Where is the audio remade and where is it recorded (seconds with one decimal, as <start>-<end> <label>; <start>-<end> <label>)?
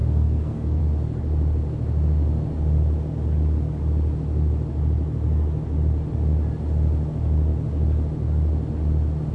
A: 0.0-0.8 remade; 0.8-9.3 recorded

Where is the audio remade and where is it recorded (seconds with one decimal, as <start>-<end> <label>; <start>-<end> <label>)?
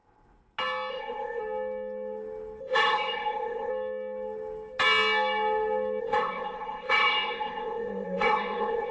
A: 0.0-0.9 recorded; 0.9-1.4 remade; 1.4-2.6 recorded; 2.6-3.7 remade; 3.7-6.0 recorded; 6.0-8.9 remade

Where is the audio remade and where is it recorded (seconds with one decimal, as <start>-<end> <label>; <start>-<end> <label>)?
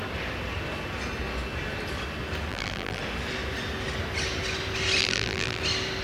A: 0.0-2.5 recorded; 2.5-3.0 remade; 3.0-5.0 recorded; 5.0-5.6 remade; 5.6-6.0 recorded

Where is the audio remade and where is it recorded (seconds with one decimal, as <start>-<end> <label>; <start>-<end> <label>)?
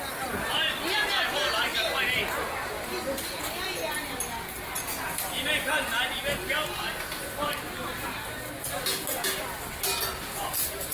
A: 0.0-10.9 recorded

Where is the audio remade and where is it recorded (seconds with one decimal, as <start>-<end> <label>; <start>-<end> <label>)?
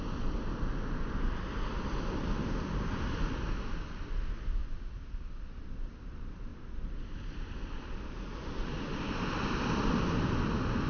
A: 0.0-10.9 recorded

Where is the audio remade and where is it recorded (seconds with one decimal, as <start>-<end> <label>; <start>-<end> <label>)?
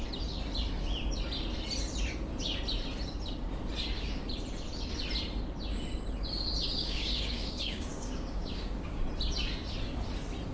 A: 0.0-6.8 recorded; 6.8-9.0 remade; 9.0-10.5 recorded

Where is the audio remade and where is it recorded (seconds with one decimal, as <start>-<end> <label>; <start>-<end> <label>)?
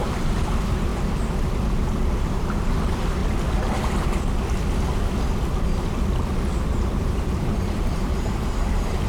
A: 0.0-0.9 remade; 0.9-2.2 recorded; 2.2-3.2 remade; 3.2-6.6 recorded; 6.6-9.1 remade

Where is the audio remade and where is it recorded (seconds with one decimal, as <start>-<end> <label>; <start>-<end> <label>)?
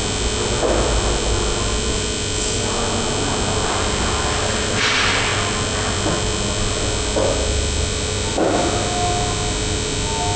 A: 0.0-10.4 recorded